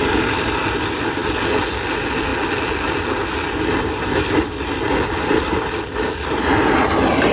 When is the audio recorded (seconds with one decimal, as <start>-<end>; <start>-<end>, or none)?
0.0-7.3